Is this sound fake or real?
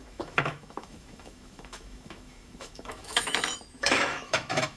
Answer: fake